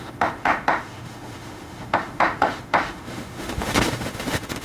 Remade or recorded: remade